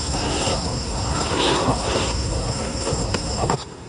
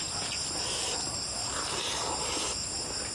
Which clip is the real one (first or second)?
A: second